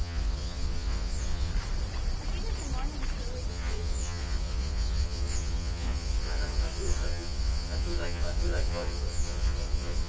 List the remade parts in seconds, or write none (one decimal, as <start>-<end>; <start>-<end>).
0.0-1.5; 3.5-10.1

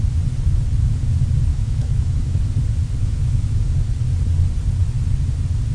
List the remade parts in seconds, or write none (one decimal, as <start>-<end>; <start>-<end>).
1.5-2.4; 3.0-3.6

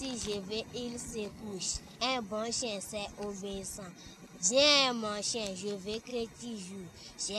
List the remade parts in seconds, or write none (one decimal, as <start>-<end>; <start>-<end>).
1.3-2.0

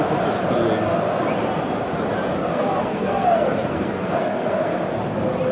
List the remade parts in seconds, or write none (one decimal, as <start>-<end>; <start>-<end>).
2.4-4.8

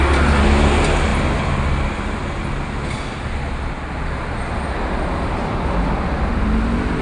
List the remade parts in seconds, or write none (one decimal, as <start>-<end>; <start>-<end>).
none